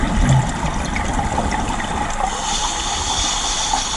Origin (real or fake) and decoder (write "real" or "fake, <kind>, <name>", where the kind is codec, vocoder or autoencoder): real